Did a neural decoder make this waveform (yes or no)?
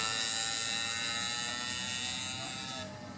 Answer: no